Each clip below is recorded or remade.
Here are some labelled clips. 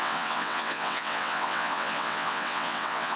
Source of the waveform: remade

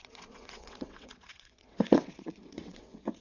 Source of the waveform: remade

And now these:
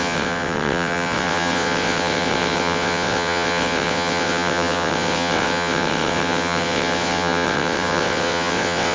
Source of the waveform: remade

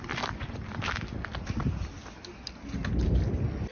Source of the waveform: recorded